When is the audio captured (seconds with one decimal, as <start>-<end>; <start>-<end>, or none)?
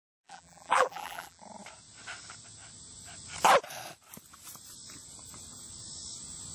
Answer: 1.4-6.5